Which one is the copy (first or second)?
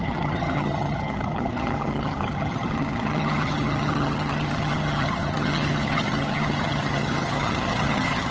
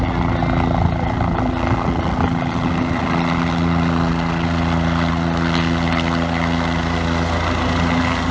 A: first